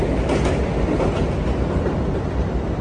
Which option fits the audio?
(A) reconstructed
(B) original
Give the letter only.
B